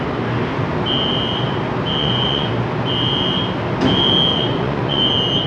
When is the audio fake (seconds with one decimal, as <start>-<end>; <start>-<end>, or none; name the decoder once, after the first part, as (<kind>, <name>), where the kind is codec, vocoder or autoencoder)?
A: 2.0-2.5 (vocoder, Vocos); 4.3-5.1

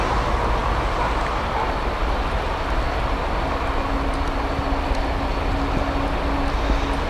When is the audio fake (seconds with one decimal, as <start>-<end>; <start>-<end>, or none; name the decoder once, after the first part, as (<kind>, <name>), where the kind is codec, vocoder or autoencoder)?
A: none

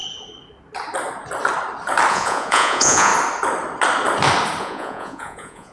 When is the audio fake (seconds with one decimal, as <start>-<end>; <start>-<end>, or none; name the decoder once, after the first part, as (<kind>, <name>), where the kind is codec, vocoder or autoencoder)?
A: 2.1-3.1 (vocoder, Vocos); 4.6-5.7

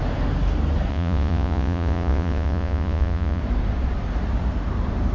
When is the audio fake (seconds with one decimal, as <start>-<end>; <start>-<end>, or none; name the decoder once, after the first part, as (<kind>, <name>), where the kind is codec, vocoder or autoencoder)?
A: 0.9-3.4 (vocoder, Vocos)